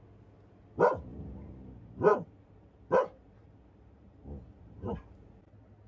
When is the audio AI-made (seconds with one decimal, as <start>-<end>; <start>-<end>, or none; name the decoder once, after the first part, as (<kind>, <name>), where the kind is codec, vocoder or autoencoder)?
1.1-1.7 (vocoder, BigVGAN v2); 2.1-4.9